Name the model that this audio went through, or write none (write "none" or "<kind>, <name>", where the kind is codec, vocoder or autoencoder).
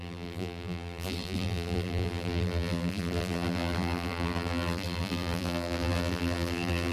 vocoder, BigVGAN v2